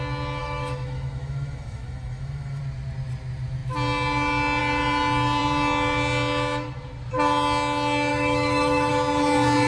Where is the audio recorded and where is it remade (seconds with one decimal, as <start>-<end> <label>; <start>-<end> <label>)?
0.0-0.4 recorded; 0.4-2.6 remade; 2.6-8.1 recorded; 8.1-8.9 remade; 8.9-9.7 recorded